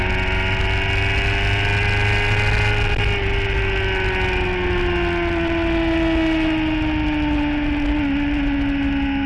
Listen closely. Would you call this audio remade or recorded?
recorded